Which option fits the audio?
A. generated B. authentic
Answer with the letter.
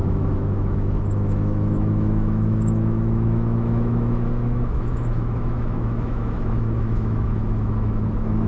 A